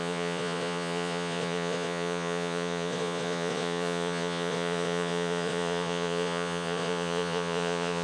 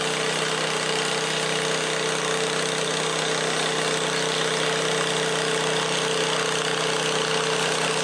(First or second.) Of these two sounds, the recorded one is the second